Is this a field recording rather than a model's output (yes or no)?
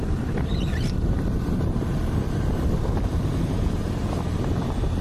no